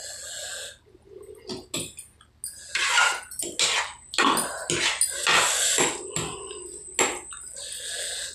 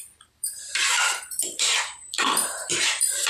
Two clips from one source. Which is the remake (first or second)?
second